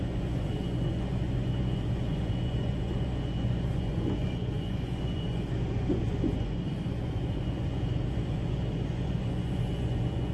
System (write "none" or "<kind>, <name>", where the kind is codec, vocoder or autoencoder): vocoder, Vocos